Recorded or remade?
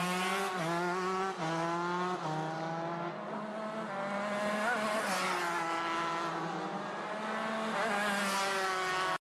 recorded